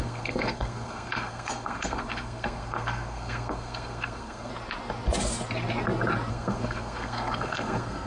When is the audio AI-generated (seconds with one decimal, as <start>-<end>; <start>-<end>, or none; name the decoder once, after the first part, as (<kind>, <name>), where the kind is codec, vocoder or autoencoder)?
0.0-4.5 (codec, SNAC); 6.3-8.1